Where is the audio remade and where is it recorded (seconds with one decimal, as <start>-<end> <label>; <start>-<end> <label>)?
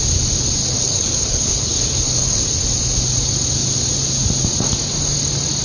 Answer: 0.0-0.6 recorded; 0.6-2.4 remade; 2.4-5.6 recorded